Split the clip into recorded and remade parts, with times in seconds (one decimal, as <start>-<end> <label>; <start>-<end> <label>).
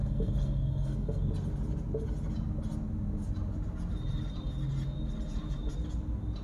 0.0-1.2 remade; 1.2-6.4 recorded